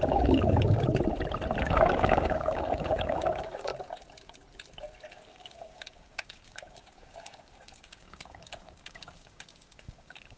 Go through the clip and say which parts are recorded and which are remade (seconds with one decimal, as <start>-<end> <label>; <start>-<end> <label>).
0.0-0.9 remade; 0.9-1.6 recorded; 1.6-3.7 remade; 3.7-5.1 recorded; 5.1-10.4 remade